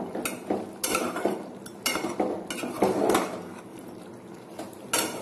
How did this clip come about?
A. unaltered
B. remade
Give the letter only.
A